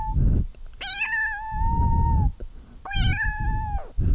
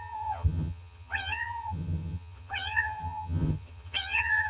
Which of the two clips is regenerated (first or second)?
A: second